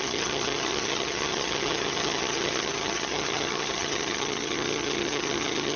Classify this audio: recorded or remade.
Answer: remade